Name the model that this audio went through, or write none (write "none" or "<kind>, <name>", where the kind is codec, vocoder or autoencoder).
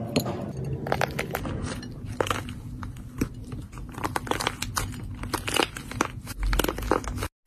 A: none